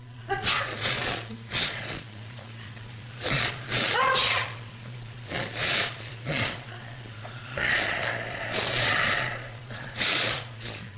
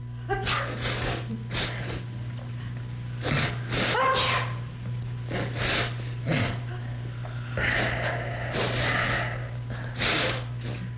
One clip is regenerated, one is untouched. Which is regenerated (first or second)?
first